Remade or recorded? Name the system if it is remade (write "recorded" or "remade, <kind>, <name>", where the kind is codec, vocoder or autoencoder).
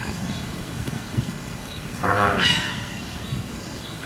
remade, codec, SNAC